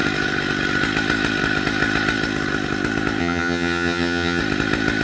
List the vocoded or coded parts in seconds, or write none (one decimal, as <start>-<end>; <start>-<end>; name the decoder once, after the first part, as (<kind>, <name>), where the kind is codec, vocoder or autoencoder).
3.2-4.4 (vocoder, HiFi-GAN)